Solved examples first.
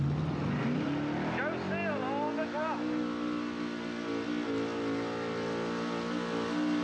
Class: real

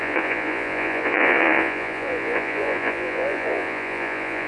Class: fake